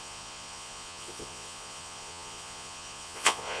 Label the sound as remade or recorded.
remade